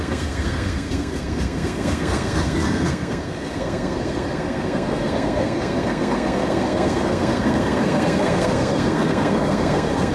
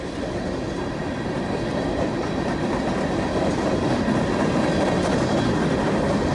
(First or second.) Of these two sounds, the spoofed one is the first